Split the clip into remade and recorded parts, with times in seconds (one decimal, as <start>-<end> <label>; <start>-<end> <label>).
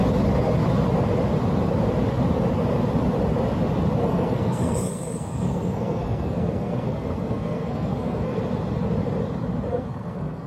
0.0-4.0 recorded; 4.0-8.4 remade; 8.4-9.7 recorded; 9.7-10.5 remade